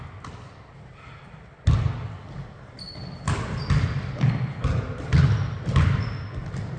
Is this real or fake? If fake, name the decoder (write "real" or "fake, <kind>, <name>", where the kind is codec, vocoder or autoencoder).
real